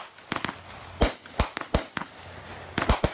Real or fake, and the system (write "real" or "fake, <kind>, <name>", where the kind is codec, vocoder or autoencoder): real